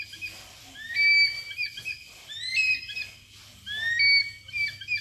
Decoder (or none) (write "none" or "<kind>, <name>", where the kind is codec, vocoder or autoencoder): none